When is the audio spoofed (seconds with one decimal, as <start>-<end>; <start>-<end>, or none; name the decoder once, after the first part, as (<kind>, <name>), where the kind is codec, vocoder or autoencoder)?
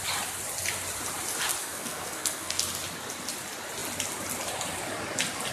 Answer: 1.6-2.6 (codec, SNAC)